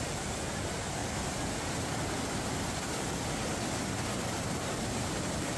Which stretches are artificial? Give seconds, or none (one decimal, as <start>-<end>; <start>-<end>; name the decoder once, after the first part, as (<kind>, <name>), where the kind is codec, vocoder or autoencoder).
0.0-1.0 (vocoder, BigVGAN v2); 4.4-5.6